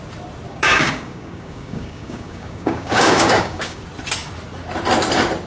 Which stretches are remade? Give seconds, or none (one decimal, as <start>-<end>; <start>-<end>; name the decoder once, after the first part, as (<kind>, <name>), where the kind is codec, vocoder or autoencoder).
0.5-3.8 (codec, DAC)